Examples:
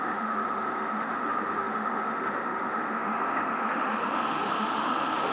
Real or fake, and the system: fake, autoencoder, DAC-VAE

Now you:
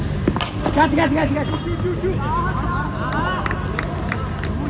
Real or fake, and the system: real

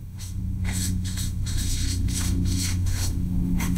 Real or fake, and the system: fake, autoencoder, DAC-VAE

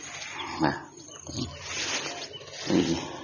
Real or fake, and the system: real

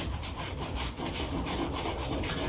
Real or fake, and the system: real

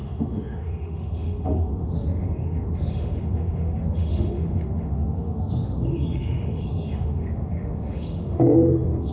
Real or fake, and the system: fake, autoencoder, DAC-VAE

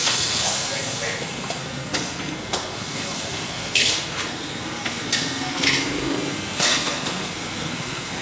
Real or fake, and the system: fake, codec, SNAC